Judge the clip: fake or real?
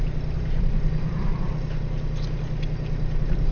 real